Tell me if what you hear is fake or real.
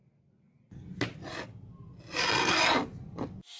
real